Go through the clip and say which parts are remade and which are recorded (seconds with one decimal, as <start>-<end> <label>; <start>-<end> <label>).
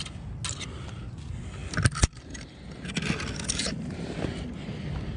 0.0-5.2 recorded